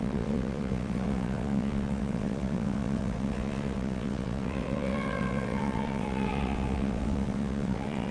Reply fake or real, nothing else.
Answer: fake